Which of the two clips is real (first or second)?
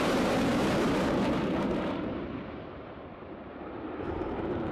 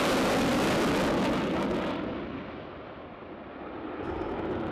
second